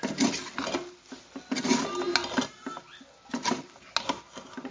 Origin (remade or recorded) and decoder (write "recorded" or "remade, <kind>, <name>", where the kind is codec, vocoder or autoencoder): recorded